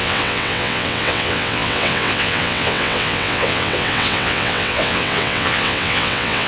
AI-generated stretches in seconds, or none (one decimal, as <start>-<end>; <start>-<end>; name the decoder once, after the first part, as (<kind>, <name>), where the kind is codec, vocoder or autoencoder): 0.0-6.5 (vocoder, WaveNeXt)